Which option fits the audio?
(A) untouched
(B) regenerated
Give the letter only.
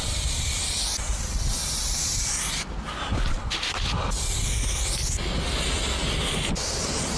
A